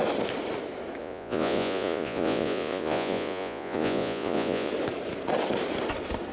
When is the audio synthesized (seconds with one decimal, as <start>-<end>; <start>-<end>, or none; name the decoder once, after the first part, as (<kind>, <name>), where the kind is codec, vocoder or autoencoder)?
1.0-4.7 (vocoder, Vocos)